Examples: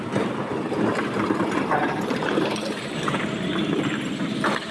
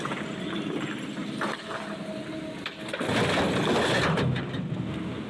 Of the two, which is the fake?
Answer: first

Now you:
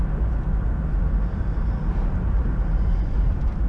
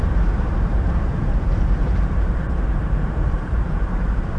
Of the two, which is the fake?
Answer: second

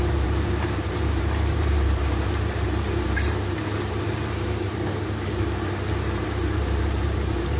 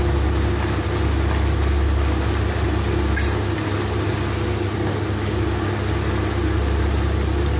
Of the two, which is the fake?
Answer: first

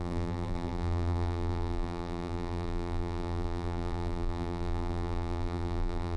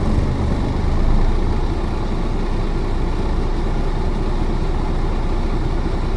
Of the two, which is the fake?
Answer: first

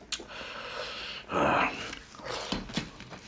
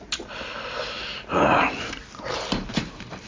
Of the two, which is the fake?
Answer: second